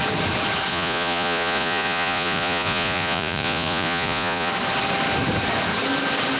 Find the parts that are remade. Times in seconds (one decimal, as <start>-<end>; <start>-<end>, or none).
0.7-4.5